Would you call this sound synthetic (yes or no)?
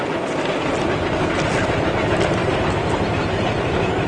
no